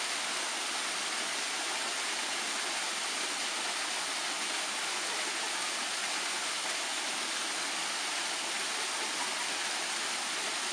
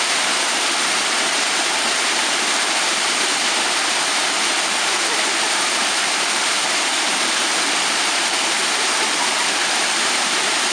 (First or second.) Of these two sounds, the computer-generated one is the second